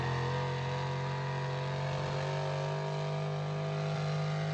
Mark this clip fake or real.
real